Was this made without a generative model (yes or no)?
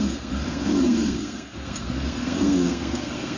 no